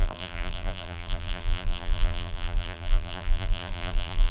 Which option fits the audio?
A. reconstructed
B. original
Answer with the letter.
A